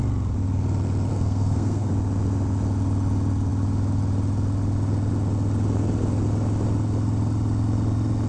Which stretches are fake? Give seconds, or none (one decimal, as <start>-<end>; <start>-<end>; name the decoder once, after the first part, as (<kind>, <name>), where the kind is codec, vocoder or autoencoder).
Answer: 1.1-1.9 (codec, SNAC)